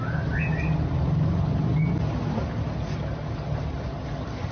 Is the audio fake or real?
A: real